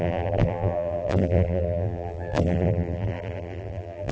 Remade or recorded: remade